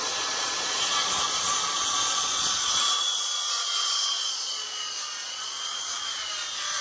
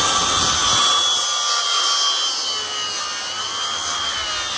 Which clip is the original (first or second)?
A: second